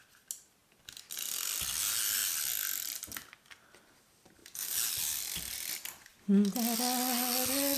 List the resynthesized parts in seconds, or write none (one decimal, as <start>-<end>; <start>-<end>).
none